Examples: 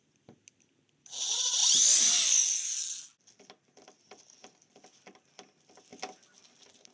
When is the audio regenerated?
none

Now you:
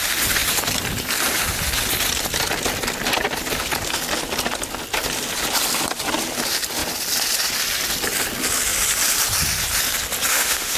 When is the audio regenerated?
10.3-10.8 (autoencoder, DAC-VAE)

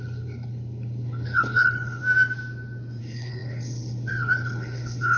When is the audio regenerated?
0.0-2.0 (codec, HILCodec); 3.0-5.2